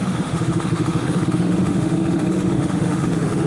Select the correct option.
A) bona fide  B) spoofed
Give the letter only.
B